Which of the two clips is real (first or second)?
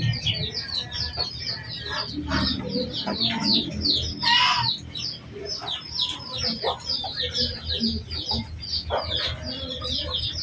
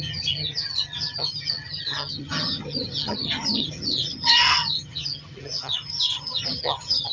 first